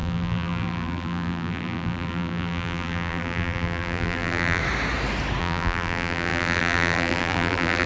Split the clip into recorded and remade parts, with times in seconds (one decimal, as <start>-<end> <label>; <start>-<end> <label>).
0.0-4.6 remade; 4.6-5.4 recorded; 5.4-7.9 remade